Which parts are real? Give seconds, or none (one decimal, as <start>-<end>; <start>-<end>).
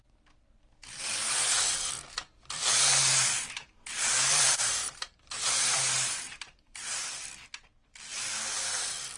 0.0-3.1; 7.0-9.2